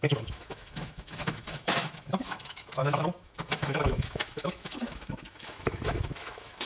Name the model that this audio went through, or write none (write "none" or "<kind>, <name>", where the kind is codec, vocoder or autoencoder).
autoencoder, DAC-VAE